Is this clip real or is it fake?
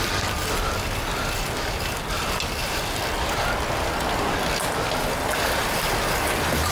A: real